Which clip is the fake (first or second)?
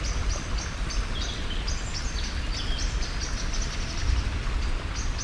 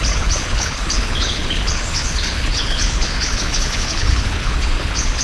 second